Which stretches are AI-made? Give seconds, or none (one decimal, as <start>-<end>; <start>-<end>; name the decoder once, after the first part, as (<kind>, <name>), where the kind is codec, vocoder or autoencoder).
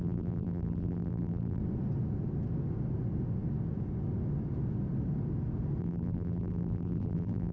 0.0-1.6 (vocoder, BigVGAN v2); 5.8-7.5